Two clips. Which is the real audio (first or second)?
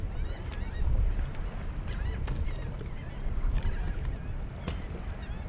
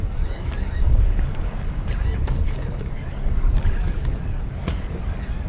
first